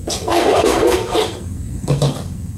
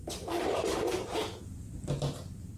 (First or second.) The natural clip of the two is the second